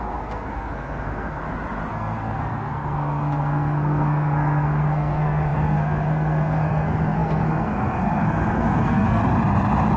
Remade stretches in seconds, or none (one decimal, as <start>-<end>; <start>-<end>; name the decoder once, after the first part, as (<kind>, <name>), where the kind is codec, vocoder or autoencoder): 0.0-1.4 (codec, SNAC); 1.9-9.2

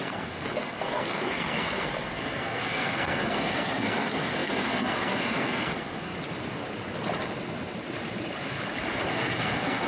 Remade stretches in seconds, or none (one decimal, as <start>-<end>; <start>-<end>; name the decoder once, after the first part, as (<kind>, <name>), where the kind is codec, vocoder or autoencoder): 0.0-6.1 (codec, SNAC); 9.1-9.9